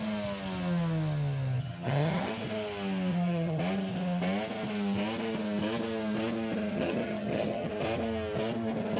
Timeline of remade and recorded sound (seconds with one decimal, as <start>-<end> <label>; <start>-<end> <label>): 0.0-1.6 recorded; 1.6-2.3 remade; 2.3-3.1 recorded; 3.1-3.6 remade; 3.6-6.7 recorded; 6.7-7.7 remade; 7.7-9.0 recorded

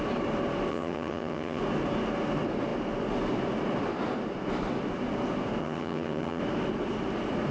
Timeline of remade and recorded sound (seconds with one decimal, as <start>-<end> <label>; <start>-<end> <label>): 0.0-0.7 recorded; 0.7-1.6 remade; 1.6-5.6 recorded; 5.6-6.4 remade; 6.4-7.5 recorded

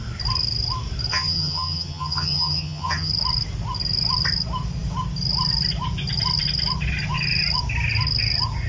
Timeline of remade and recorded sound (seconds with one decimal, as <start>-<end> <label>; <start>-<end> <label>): 0.0-1.1 recorded; 1.1-3.1 remade; 3.1-8.7 recorded